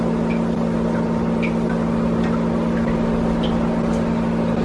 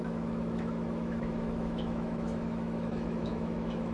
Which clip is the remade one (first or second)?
second